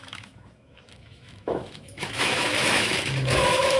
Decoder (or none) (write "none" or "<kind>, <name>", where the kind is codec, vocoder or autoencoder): autoencoder, DAC-VAE